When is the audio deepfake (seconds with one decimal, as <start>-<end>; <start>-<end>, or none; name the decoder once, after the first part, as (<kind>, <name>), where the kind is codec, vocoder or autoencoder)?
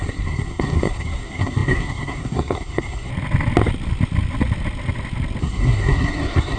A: 0.0-3.1 (codec, SNAC); 5.4-6.6